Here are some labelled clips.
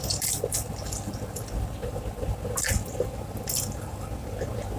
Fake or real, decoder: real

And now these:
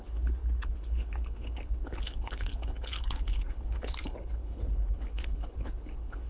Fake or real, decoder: fake, codec, HILCodec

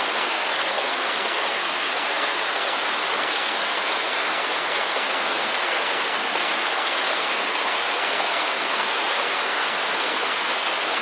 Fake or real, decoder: fake, codec, SNAC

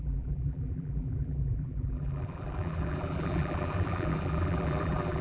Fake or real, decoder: fake, vocoder, BigVGAN v2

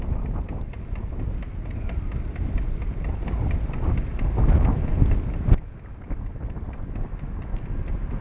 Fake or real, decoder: real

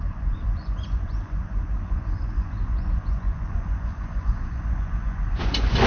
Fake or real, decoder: fake, vocoder, Vocos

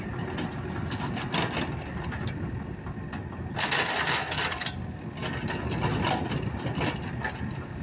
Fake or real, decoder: real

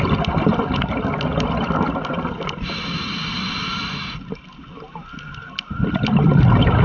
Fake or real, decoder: real